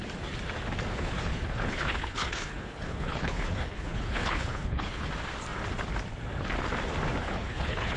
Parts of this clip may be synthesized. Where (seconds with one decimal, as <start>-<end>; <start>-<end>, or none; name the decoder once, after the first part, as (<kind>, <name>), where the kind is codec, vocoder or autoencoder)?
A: 0.9-5.1 (codec, HILCodec); 7.2-8.0